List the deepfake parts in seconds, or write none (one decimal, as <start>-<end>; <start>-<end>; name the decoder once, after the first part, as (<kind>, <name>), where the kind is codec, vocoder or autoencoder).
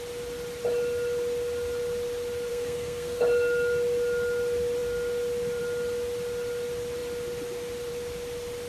2.5-3.2 (codec, SNAC)